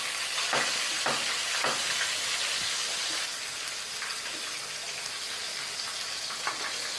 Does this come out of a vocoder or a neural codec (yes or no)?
no